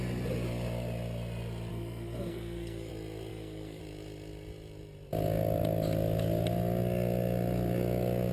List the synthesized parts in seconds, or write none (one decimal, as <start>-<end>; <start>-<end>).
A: 1.7-2.9; 3.3-3.8